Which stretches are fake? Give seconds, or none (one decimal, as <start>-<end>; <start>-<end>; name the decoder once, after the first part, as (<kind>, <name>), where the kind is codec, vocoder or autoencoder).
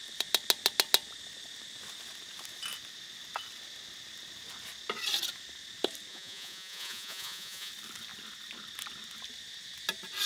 6.1-7.7 (vocoder, Vocos)